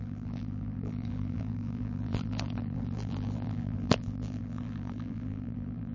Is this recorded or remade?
remade